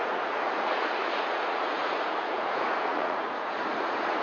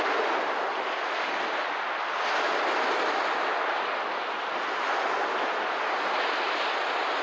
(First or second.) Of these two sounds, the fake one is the first